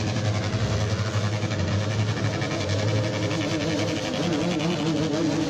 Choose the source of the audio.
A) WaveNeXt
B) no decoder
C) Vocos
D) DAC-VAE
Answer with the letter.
B